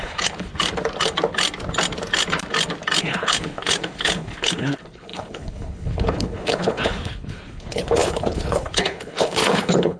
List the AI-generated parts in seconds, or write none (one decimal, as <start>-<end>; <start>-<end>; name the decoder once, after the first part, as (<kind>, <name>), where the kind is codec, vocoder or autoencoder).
0.0-0.5 (codec, HILCodec); 3.0-10.0